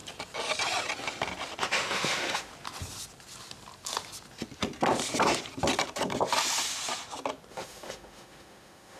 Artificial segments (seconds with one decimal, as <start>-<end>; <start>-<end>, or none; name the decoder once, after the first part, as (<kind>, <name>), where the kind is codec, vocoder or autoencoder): 1.6-2.5 (autoencoder, DAC-VAE); 7.5-9.0